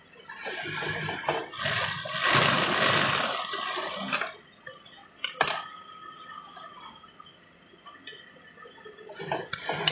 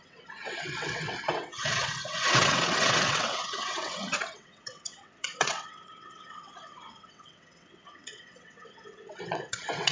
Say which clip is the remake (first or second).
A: second